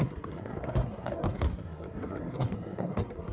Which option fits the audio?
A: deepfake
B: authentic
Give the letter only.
A